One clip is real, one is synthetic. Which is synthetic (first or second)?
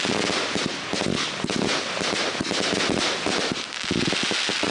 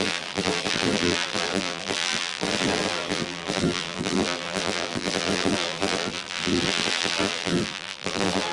second